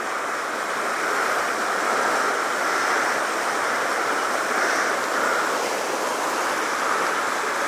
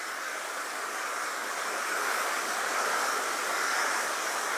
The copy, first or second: second